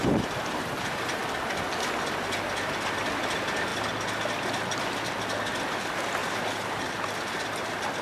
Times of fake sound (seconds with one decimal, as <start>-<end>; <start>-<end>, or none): 0.0-1.2; 3.7-4.2; 6.2-6.9